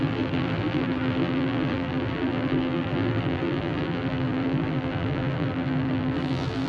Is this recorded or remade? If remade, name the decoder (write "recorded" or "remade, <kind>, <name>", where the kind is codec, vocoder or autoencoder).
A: remade, vocoder, BigVGAN v2